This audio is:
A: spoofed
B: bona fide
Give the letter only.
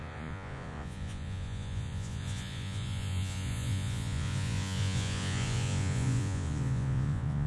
A